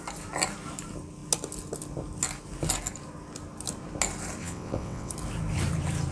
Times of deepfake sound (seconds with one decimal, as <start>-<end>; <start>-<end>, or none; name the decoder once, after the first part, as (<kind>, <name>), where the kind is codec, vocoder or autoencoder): 4.4-5.1 (vocoder, WaveNeXt)